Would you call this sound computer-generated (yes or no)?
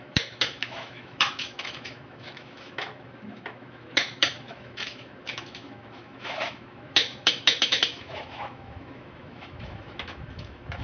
yes